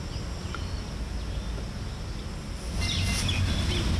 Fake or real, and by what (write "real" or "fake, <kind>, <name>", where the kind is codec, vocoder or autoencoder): real